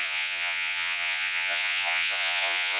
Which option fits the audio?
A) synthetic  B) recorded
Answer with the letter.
A